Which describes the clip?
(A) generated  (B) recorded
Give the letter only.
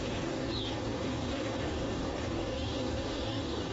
A